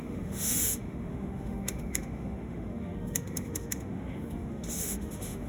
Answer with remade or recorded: remade